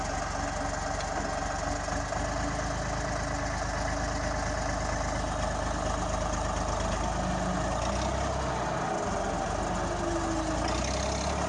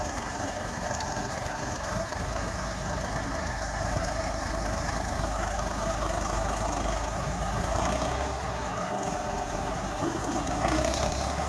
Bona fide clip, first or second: first